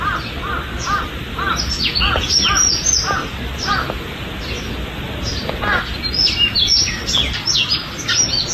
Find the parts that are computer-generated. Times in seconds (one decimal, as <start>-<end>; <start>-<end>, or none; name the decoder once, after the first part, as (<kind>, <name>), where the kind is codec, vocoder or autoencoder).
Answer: none